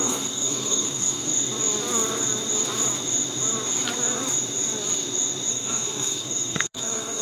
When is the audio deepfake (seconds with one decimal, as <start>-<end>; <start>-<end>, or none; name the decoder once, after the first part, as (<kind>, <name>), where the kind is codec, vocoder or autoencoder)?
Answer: 0.0-1.3 (codec, SNAC); 5.5-7.2